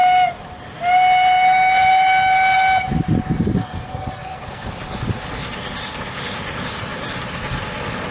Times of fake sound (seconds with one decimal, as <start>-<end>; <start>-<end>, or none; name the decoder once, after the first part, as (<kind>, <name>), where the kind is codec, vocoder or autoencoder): 3.6-4.7 (codec, SNAC)